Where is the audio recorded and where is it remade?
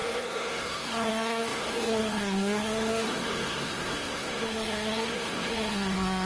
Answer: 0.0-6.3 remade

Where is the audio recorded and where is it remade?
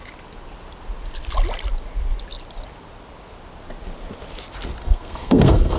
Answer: 0.0-4.8 recorded; 4.8-5.8 remade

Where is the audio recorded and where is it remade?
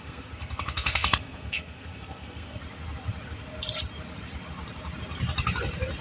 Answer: 0.0-2.6 remade; 2.6-6.0 recorded